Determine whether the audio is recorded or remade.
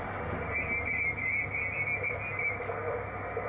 recorded